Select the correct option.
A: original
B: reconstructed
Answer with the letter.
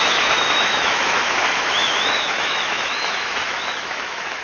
B